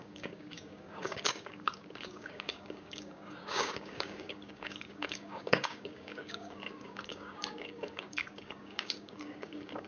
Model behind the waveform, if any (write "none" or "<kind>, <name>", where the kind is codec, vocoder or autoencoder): codec, DAC